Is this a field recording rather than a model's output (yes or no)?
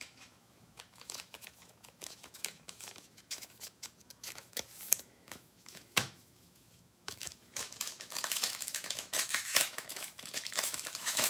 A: no